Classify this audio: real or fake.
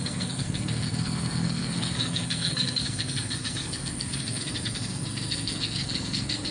fake